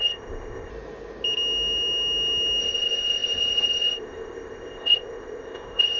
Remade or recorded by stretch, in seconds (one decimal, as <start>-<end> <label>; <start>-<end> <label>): 0.0-0.7 remade; 0.7-2.6 recorded; 2.6-6.0 remade